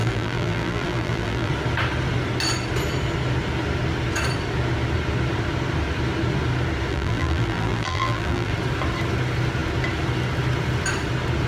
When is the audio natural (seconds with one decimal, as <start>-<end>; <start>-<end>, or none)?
1.5-6.9; 8.5-11.5